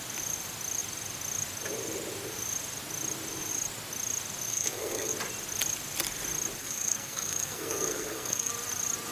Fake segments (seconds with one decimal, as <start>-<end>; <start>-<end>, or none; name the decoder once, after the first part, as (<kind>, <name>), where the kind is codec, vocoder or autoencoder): 4.5-5.1 (codec, SNAC); 6.6-8.5